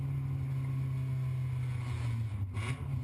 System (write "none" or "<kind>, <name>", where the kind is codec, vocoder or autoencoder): none